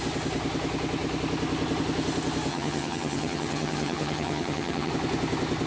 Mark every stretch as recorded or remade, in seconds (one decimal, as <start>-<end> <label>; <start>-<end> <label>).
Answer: 0.0-2.5 recorded; 2.5-4.9 remade; 4.9-5.7 recorded